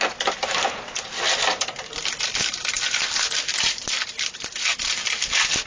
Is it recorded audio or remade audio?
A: recorded